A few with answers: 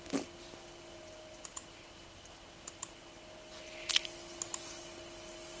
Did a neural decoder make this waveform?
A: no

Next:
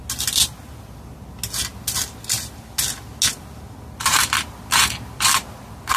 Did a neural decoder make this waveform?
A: no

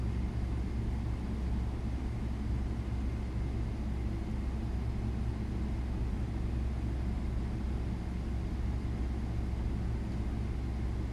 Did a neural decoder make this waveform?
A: no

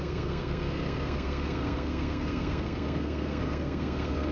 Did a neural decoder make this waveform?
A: yes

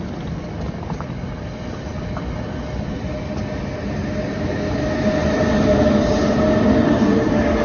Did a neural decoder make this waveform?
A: no